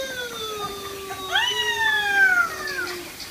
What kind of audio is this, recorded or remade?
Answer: recorded